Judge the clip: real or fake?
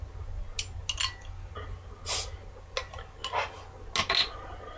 real